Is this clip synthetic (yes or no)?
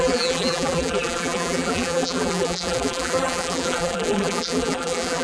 yes